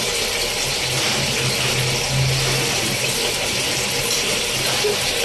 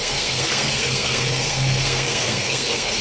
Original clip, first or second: first